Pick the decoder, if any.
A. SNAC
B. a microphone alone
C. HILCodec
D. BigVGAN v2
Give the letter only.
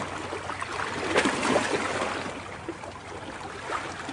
B